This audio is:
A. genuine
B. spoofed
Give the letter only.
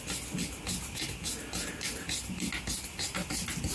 A